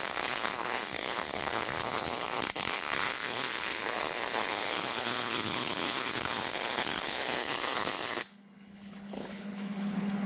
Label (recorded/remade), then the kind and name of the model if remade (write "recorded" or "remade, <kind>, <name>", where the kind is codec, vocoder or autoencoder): remade, codec, HILCodec